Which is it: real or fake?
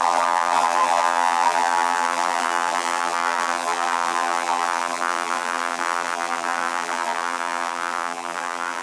fake